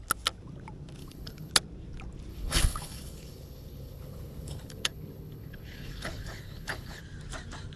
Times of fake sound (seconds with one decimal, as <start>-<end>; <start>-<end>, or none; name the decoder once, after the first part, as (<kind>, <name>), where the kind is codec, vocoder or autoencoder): 1.0-1.5 (codec, HILCodec); 2.3-7.0